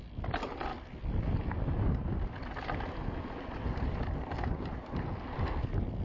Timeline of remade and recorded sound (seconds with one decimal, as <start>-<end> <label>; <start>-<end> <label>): 0.0-6.0 recorded